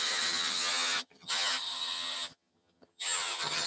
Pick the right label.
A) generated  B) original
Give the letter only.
A